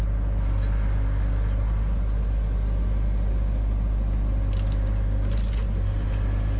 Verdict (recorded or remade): recorded